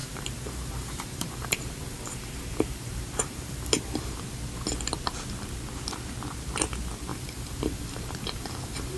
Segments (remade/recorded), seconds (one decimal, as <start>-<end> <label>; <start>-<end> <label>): 0.0-4.2 remade; 4.2-7.1 recorded; 7.1-9.0 remade